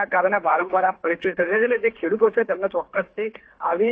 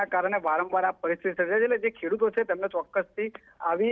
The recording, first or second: second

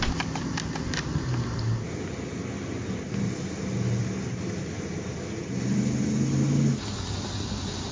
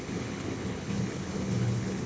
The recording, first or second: first